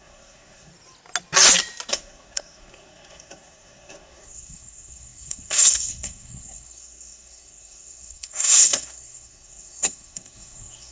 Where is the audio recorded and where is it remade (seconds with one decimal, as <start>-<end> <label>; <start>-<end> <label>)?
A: 0.0-0.7 remade; 0.7-1.9 recorded; 1.9-10.9 remade